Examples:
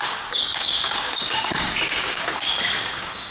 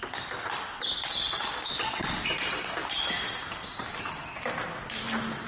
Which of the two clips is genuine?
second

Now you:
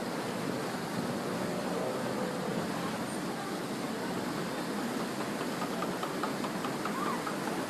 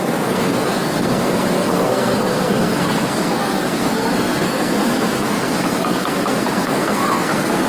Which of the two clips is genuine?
first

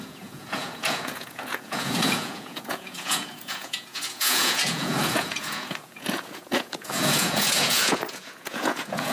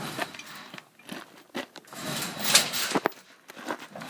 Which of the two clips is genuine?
second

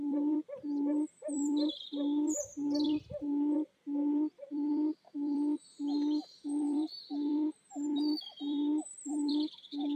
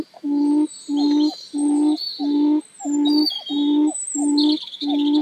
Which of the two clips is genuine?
second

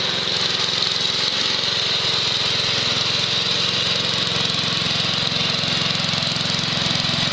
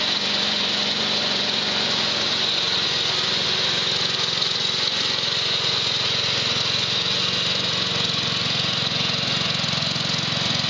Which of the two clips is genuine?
first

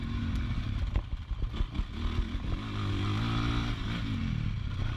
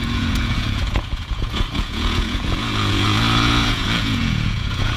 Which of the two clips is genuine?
first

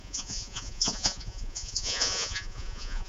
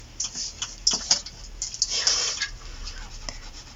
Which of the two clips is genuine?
second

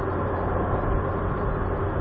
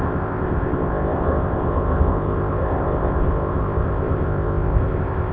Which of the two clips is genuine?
first